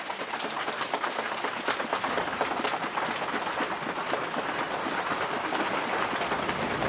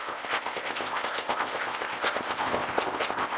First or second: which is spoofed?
second